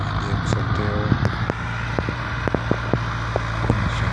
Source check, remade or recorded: recorded